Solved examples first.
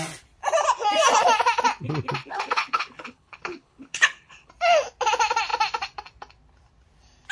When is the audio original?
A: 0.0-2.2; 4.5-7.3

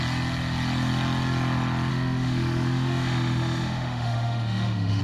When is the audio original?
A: 0.0-1.9

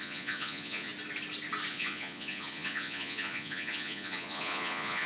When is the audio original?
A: 0.9-1.7

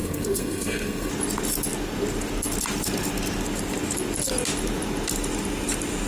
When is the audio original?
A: 1.1-6.1

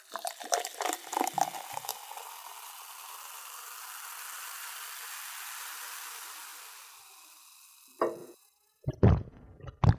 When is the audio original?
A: 0.0-8.2; 9.6-10.0

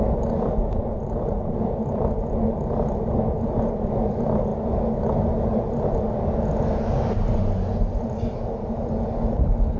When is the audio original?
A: 0.0-9.8